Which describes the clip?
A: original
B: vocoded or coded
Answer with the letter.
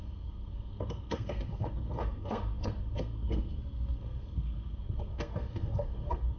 B